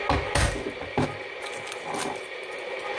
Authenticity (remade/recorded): recorded